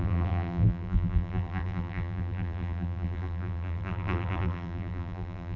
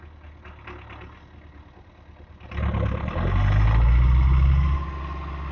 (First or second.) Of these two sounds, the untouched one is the second